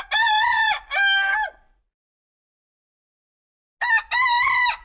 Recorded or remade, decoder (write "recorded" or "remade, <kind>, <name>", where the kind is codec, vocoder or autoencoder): recorded